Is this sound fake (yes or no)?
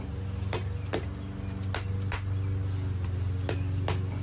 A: no